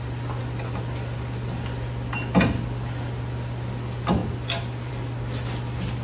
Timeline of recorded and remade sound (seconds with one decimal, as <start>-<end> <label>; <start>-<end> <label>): 0.0-6.0 recorded